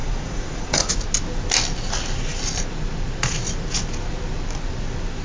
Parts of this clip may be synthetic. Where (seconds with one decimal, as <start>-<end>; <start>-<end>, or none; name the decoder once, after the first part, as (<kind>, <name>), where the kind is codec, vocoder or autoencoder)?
0.0-0.9 (vocoder, Vocos)